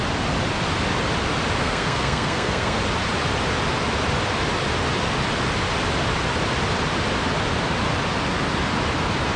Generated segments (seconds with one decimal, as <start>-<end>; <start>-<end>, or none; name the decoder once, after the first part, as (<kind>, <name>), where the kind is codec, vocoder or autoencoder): 1.6-2.8 (codec, SNAC)